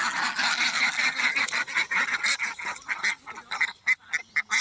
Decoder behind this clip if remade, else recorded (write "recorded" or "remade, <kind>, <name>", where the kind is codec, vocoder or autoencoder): recorded